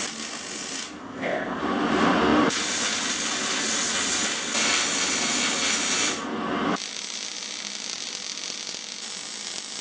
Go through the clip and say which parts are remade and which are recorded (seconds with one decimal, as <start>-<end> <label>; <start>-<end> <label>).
0.0-1.0 recorded; 1.0-1.6 remade; 1.6-9.8 recorded